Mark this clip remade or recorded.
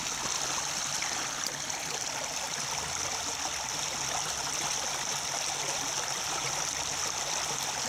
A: recorded